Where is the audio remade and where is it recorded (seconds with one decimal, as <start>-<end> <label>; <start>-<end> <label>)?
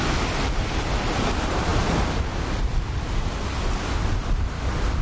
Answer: 0.0-5.0 recorded